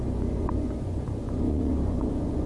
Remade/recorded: remade